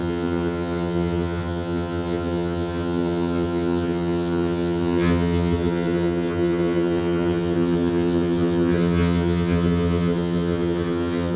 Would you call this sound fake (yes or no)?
yes